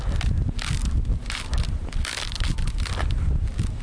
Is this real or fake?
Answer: real